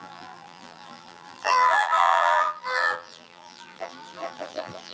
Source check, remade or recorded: remade